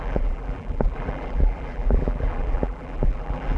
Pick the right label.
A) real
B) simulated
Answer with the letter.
B